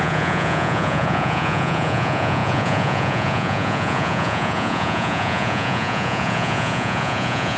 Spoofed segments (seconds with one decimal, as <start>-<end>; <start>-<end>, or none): 0.0-7.6